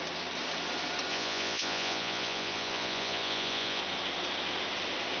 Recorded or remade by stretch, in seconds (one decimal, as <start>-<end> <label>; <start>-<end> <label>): 0.0-1.1 recorded; 1.1-3.8 remade; 3.8-5.2 recorded